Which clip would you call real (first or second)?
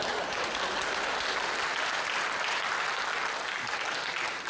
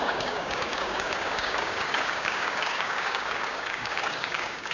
first